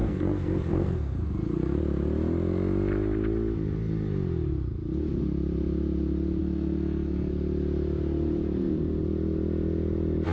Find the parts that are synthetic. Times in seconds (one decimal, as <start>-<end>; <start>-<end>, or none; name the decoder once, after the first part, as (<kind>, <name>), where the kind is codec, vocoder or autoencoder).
0.0-1.8 (codec, SNAC); 6.4-7.3